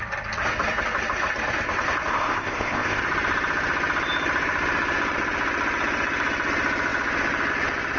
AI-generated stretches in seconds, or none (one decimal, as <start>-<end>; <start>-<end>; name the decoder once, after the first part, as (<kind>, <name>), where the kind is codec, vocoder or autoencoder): 2.1-3.0 (codec, ZipCodec)